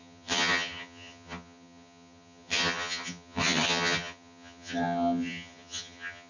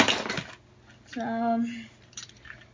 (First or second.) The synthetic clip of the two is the first